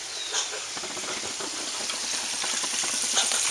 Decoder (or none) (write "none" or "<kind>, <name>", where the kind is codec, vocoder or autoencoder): none